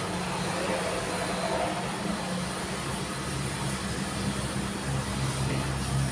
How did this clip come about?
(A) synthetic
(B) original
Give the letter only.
B